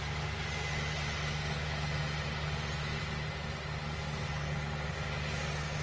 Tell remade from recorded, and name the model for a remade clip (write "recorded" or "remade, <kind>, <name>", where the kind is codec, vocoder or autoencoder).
recorded